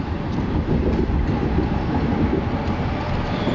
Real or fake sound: real